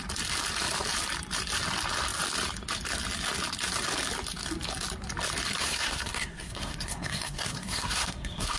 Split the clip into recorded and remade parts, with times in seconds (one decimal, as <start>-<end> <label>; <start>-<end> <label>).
0.0-5.6 recorded; 5.6-8.6 remade